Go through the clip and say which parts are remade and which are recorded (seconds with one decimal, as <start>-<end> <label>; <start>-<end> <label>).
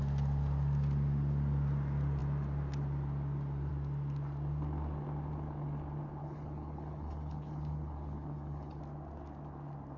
0.0-6.2 recorded; 6.2-8.8 remade; 8.8-10.0 recorded